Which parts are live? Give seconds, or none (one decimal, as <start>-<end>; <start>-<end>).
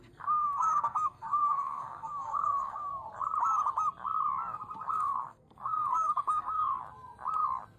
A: 2.9-4.9; 6.8-7.8